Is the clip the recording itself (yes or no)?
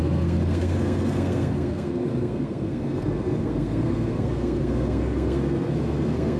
no